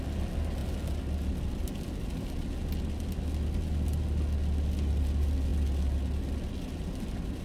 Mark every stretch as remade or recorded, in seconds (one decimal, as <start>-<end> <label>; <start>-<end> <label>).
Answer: 0.0-7.4 recorded

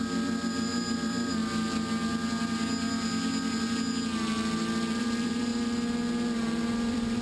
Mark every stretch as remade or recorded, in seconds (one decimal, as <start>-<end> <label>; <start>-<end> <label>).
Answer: 0.0-1.4 remade; 1.4-5.0 recorded; 5.0-5.5 remade; 5.5-6.4 recorded; 6.4-7.2 remade

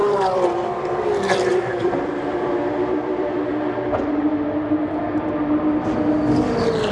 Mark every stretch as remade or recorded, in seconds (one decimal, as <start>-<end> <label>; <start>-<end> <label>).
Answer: 0.0-0.7 remade; 0.7-1.5 recorded; 1.5-3.5 remade; 3.5-6.9 recorded

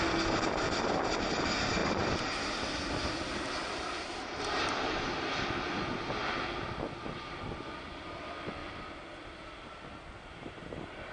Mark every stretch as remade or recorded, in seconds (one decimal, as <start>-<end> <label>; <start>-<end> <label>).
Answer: 0.0-11.1 recorded

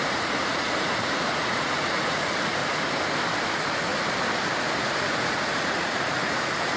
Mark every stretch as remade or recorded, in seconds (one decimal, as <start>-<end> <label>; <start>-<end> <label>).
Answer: 0.0-2.6 remade; 2.6-3.5 recorded; 3.5-3.9 remade; 3.9-4.8 recorded; 4.8-6.8 remade

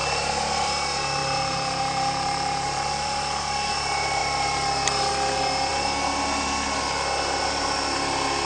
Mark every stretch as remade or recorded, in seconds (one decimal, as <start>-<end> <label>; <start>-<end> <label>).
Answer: 0.0-0.7 remade; 0.7-1.2 recorded; 1.2-3.7 remade; 3.7-8.4 recorded